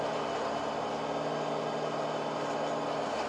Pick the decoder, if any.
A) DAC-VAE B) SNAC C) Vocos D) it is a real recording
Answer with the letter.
D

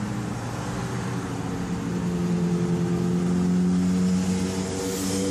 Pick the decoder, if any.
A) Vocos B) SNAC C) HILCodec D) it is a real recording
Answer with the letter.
D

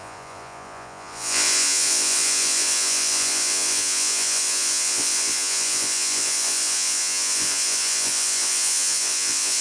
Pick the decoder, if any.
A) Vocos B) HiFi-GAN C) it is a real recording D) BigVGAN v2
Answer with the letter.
A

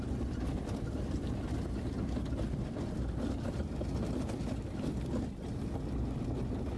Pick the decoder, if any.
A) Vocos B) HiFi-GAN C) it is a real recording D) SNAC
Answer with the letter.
C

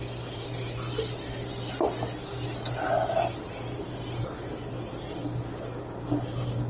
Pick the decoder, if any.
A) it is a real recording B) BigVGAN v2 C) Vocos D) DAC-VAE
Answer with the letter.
A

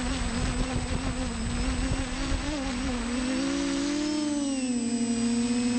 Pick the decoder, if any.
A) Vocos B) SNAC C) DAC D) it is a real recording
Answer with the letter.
D